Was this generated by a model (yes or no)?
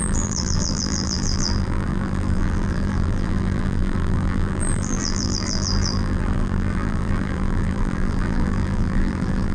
yes